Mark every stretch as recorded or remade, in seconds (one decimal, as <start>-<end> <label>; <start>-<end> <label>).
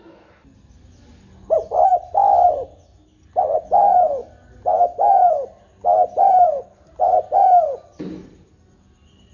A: 0.0-9.3 recorded